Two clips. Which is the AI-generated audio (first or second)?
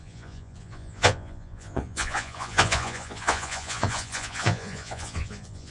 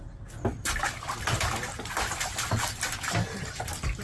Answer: first